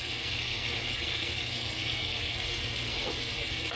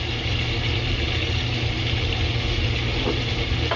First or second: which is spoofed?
first